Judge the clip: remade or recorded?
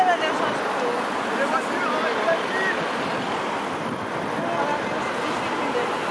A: recorded